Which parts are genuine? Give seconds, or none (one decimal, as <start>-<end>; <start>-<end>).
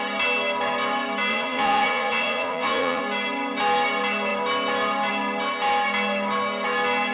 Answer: 0.0-1.3; 3.0-7.1